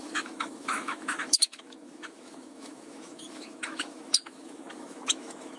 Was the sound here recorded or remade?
remade